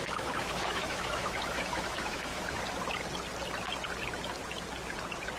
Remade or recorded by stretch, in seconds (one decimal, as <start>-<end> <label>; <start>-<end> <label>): 0.0-2.6 remade; 2.6-5.4 recorded